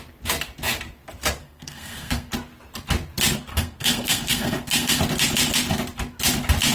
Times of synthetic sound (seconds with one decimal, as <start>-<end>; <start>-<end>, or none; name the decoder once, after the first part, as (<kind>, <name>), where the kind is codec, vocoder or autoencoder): 1.4-2.3 (codec, SNAC); 3.5-5.0